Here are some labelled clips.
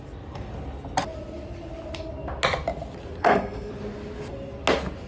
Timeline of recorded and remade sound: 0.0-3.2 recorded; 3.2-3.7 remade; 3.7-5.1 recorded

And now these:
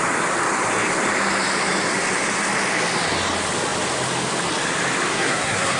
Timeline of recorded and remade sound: 0.0-5.1 recorded; 5.1-5.8 remade

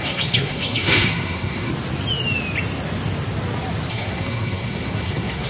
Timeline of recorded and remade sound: 0.0-1.7 remade; 1.7-3.9 recorded; 3.9-5.5 remade

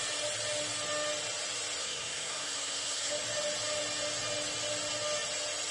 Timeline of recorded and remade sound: 0.0-1.8 recorded; 1.8-3.1 remade; 3.1-5.7 recorded

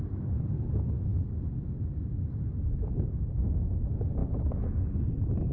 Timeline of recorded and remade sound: 0.0-5.5 recorded

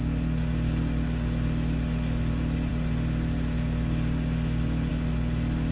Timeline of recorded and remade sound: 0.0-5.7 recorded